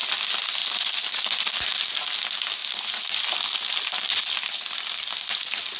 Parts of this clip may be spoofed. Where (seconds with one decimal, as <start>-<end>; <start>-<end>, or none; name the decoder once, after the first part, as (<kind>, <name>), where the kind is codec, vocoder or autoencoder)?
none